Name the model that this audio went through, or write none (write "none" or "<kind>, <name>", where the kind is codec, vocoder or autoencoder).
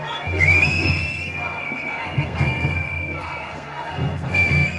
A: codec, SNAC